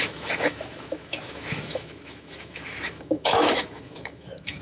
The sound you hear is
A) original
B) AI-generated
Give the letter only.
B